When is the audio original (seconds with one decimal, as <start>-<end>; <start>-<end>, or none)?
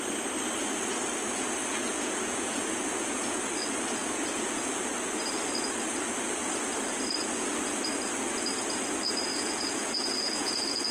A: 0.0-1.7; 3.4-4.0; 4.8-9.3